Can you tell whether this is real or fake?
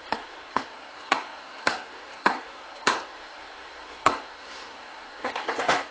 fake